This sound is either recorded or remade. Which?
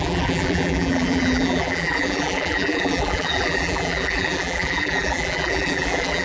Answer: remade